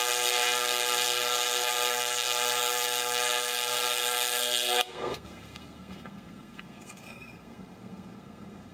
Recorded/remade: remade